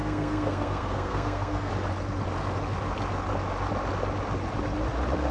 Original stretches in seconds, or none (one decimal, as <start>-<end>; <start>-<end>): 1.7-5.3